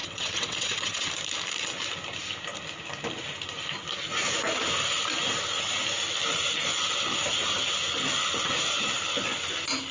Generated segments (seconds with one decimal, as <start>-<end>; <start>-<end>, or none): 0.0-1.1